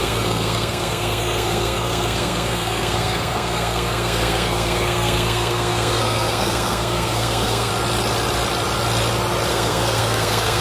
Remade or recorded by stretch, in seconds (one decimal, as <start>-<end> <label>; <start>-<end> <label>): 0.0-7.7 remade; 7.7-9.5 recorded; 9.5-10.6 remade